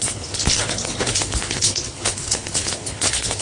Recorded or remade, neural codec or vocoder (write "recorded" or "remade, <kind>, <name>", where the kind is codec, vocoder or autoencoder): remade, codec, HILCodec